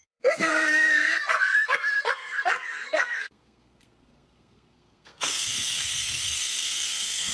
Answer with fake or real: fake